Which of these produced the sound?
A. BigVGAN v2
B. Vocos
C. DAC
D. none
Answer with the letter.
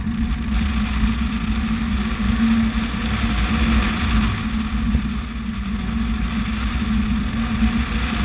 D